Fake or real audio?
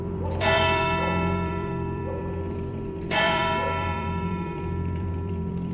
fake